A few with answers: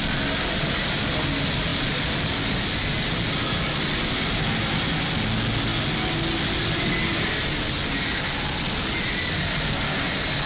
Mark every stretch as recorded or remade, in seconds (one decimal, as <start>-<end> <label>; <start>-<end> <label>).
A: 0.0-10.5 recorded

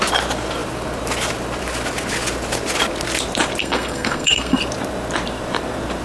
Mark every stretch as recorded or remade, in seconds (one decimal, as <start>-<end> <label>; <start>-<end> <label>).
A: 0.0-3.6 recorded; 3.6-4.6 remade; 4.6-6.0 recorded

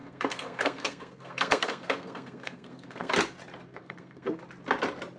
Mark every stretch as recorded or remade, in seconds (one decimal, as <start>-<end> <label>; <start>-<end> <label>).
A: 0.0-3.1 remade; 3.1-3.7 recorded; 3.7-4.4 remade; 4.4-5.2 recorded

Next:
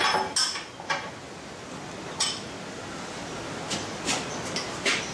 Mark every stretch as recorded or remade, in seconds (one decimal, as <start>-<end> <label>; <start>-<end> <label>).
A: 0.0-5.1 recorded

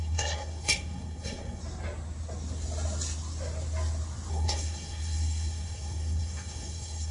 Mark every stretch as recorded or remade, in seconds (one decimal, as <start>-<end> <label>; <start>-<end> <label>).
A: 0.0-1.6 remade; 1.6-4.3 recorded; 4.3-7.1 remade